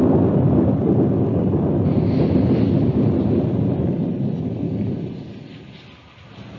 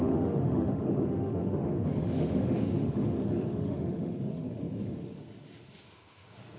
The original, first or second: first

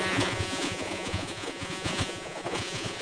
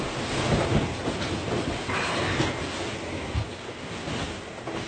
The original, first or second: second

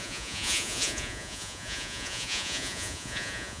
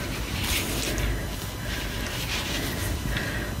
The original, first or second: second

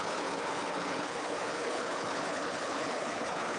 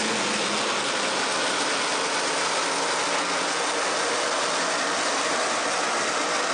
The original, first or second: second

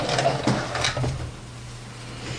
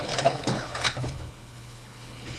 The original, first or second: first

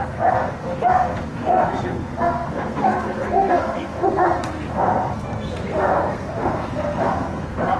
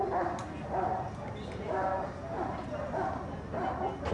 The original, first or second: second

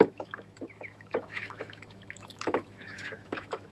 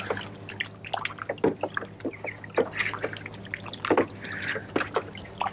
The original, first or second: second